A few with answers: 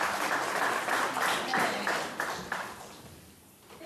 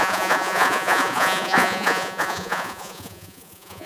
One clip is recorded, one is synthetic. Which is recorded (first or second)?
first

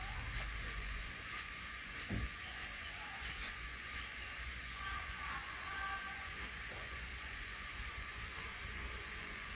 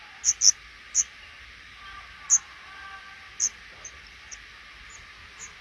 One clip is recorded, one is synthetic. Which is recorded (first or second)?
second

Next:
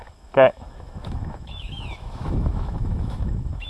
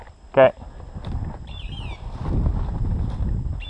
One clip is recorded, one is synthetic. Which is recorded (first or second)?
second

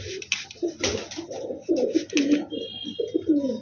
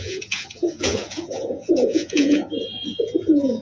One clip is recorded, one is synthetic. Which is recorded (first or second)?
first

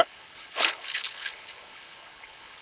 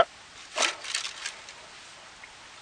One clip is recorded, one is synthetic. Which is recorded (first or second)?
second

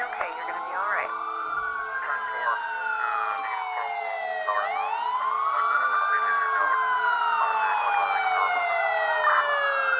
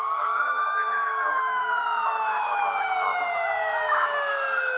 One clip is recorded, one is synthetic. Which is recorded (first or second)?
first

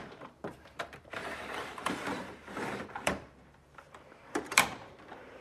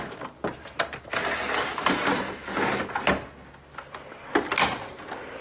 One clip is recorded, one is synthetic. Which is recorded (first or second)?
second